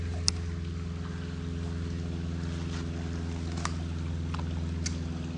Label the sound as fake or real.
real